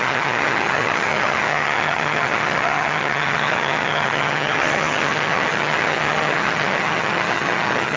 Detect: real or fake fake